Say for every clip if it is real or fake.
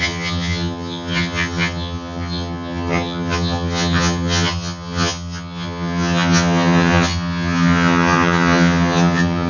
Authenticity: fake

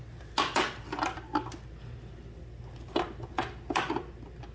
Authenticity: real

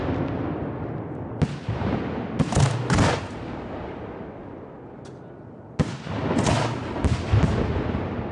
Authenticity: real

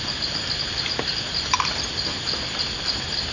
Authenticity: real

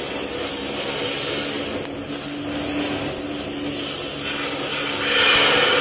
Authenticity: real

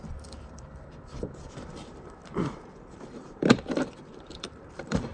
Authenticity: fake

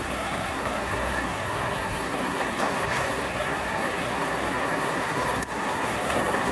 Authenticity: fake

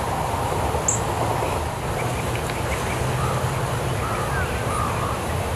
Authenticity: real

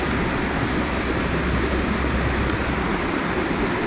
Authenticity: real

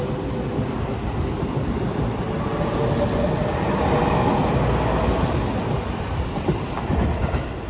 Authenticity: real